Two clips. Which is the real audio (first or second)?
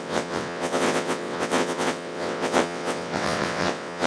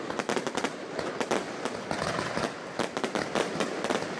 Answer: second